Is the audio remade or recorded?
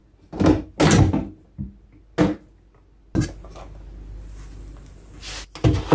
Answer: recorded